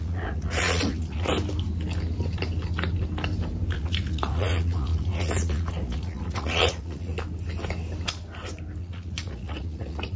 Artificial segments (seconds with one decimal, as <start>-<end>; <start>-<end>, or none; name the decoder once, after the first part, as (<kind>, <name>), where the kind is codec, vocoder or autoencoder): 0.0-1.3 (vocoder, Vocos); 3.7-7.1; 8.8-10.2